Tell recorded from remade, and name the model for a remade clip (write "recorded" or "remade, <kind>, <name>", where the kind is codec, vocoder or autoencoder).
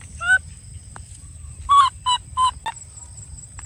recorded